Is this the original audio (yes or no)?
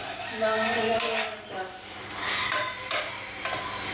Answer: yes